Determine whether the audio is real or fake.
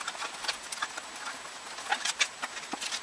real